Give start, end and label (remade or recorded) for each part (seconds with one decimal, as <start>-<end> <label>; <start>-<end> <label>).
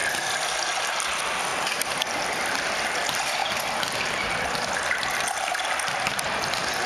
0.0-1.5 recorded; 1.5-2.7 remade; 2.7-6.9 recorded